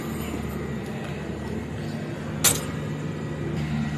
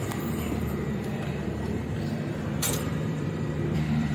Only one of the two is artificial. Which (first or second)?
second